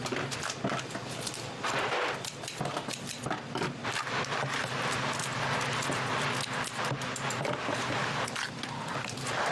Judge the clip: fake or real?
real